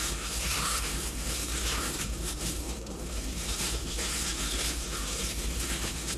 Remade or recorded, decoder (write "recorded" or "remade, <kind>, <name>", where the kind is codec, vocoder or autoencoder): remade, codec, SNAC